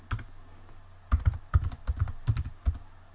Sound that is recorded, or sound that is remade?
recorded